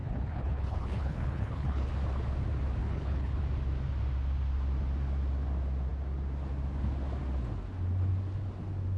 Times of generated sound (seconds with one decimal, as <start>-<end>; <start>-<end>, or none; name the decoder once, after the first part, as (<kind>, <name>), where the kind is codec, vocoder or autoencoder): 0.0-1.9 (codec, HILCodec); 2.8-3.4